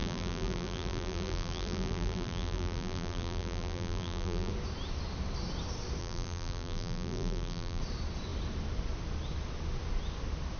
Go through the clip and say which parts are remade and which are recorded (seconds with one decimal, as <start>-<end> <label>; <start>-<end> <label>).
0.0-4.5 remade; 4.5-6.0 recorded; 6.0-7.8 remade; 7.8-10.6 recorded